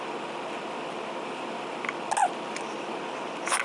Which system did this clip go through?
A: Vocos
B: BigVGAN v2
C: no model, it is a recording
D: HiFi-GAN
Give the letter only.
C